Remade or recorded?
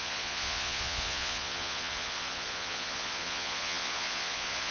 remade